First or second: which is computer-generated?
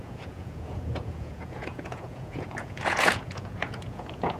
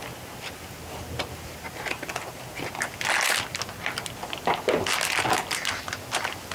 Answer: first